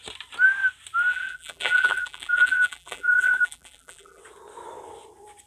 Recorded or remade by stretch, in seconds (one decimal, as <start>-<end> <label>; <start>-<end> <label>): 0.0-1.1 recorded; 1.1-4.2 remade; 4.2-5.5 recorded